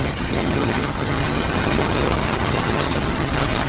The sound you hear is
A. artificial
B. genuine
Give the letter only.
A